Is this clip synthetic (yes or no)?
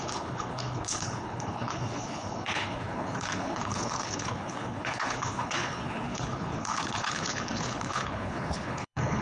yes